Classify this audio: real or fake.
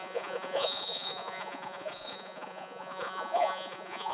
fake